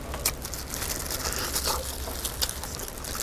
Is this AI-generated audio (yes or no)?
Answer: no